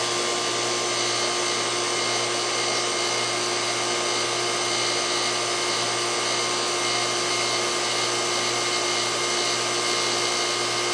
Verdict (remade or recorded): recorded